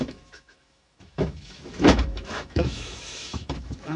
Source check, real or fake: fake